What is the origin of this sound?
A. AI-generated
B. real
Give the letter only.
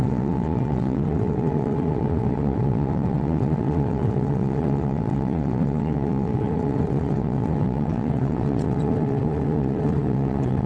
A